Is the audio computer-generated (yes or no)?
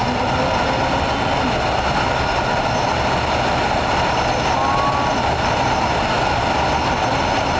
no